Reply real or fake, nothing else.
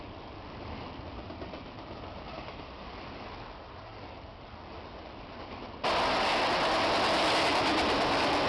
real